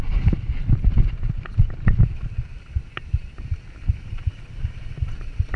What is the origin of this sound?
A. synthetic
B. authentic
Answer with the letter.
B